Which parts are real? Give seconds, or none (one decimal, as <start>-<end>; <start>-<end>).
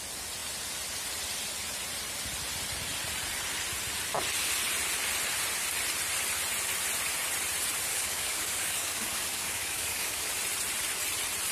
0.0-7.9; 10.3-11.5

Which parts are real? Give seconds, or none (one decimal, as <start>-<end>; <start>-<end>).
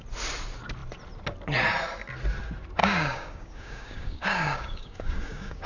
0.0-2.8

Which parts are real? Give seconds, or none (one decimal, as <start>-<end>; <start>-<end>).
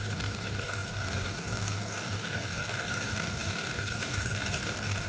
none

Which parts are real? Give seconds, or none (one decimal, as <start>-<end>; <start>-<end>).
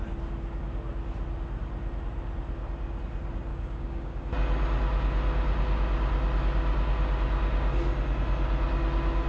0.0-3.5; 4.3-9.3